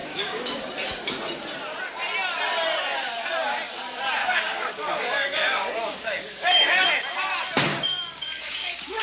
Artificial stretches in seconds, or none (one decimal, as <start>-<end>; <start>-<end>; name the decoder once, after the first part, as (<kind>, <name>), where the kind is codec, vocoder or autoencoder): 0.0-0.7 (codec, DAC); 4.2-6.9; 7.7-9.0